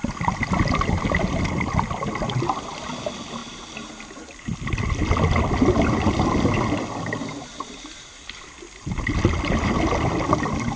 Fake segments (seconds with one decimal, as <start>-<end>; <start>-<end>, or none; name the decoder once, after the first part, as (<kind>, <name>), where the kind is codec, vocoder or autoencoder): none